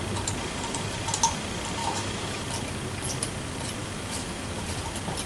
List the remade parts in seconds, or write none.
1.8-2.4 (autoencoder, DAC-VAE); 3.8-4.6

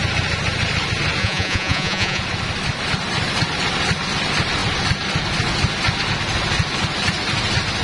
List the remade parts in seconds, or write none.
1.2-2.2 (vocoder, Vocos)

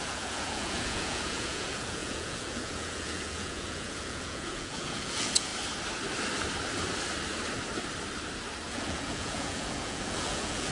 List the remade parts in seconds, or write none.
0.0-5.5 (vocoder, Vocos); 8.7-10.7

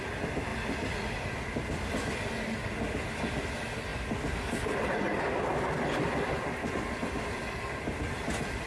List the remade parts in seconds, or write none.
none

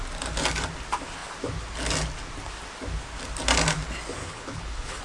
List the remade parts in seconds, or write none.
4.2-5.0 (codec, HILCodec)

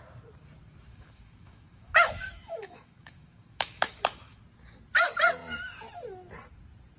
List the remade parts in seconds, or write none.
0.9-4.4 (autoencoder, DAC-VAE)

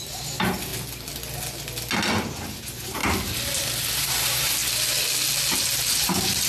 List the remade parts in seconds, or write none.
0.0-0.7 (vocoder, BigVGAN v2); 2.3-3.0; 4.1-4.6; 5.9-6.5